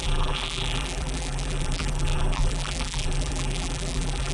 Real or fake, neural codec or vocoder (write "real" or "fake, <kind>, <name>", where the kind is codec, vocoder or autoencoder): fake, vocoder, BigVGAN v2